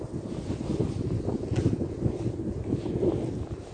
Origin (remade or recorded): recorded